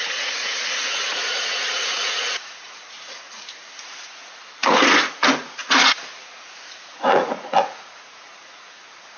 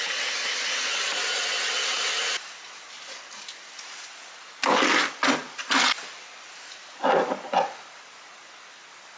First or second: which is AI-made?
first